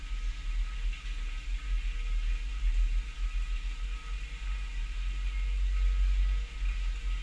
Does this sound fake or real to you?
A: real